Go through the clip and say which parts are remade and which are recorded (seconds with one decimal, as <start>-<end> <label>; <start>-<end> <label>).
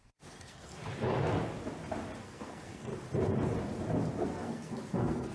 0.0-0.8 remade; 0.8-2.2 recorded; 2.2-2.9 remade; 2.9-4.2 recorded; 4.2-5.3 remade